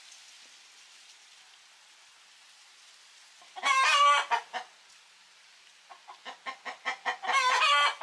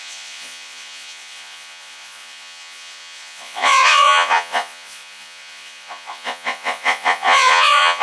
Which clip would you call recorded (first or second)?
first